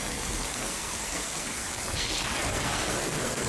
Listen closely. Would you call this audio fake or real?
fake